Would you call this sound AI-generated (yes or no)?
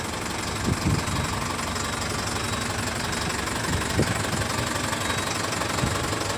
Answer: no